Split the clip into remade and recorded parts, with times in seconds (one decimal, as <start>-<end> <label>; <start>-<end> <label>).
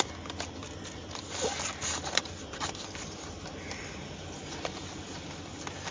0.0-5.9 recorded